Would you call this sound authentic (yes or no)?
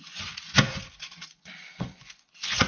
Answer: no